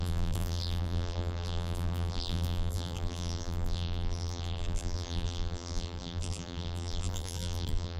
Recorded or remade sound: remade